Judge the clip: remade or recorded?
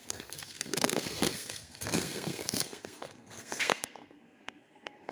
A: remade